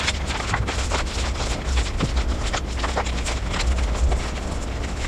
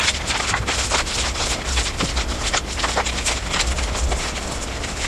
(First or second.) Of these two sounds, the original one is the first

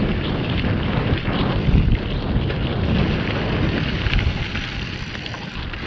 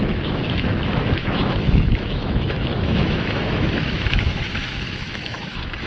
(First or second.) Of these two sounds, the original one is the first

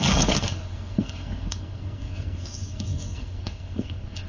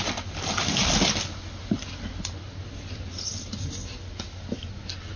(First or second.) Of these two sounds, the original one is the second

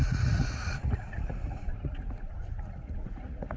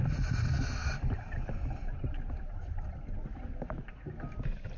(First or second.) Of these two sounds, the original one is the second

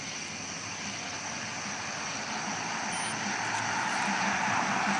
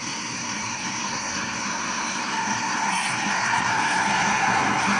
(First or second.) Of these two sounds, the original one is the first